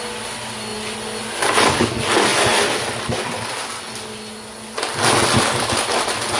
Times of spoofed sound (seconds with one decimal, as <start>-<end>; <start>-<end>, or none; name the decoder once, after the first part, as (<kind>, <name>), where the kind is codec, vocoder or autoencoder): none